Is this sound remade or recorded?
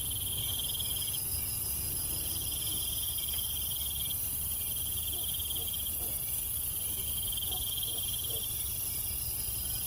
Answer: recorded